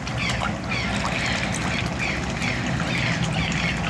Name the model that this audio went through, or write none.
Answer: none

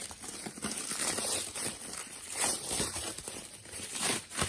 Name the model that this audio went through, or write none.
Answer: vocoder, BigVGAN v2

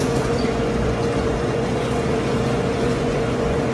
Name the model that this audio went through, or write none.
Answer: vocoder, Vocos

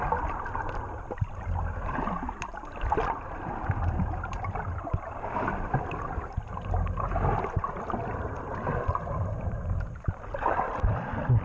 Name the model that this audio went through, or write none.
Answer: none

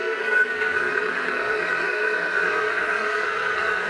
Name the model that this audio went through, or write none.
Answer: codec, SNAC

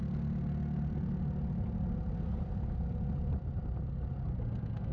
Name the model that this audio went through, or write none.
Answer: none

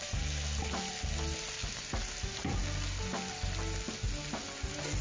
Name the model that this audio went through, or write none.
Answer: none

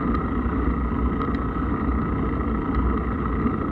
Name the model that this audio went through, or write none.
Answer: none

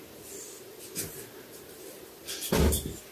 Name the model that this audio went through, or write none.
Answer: none